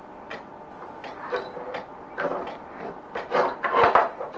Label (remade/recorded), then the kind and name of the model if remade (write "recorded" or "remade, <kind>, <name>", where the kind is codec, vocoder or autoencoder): recorded